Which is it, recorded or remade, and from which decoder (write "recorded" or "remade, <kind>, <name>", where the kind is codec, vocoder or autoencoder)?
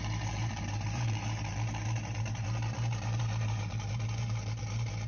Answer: remade, vocoder, BigVGAN v2